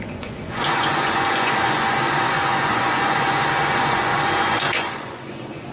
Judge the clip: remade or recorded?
remade